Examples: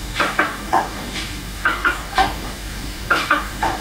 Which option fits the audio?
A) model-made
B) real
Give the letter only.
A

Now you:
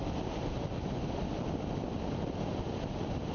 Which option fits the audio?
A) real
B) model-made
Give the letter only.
B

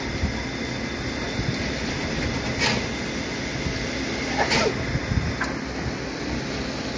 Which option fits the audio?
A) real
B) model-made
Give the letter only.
A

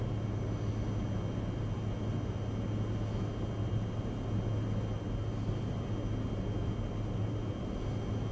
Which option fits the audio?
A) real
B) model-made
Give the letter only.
A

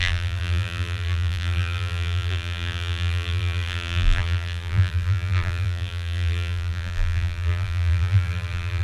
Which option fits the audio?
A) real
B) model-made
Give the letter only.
B